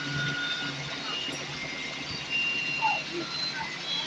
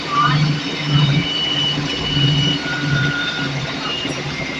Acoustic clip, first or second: first